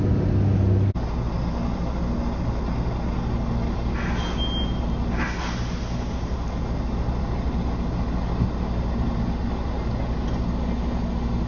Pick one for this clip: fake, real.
real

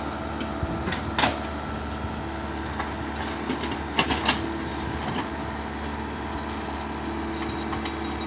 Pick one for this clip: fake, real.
real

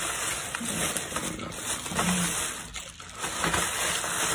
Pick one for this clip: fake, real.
real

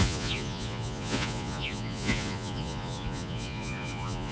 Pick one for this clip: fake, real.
fake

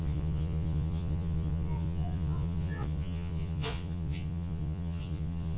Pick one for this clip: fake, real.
fake